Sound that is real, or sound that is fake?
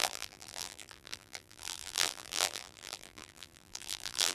fake